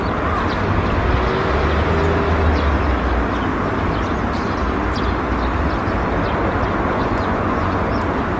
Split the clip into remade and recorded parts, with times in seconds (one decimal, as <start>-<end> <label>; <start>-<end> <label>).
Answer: 0.0-6.9 recorded; 6.9-7.9 remade; 7.9-8.4 recorded